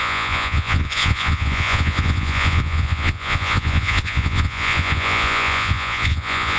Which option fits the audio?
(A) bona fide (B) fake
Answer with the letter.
B